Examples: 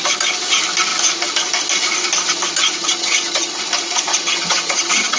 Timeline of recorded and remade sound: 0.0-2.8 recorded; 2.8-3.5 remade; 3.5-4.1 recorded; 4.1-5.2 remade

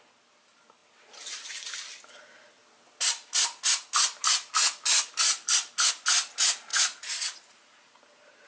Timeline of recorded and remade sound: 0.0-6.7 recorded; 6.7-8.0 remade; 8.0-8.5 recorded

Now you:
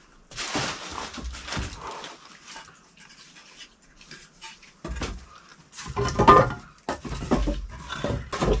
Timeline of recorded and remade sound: 0.0-8.6 recorded